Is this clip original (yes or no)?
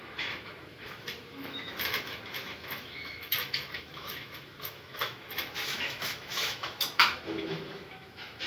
no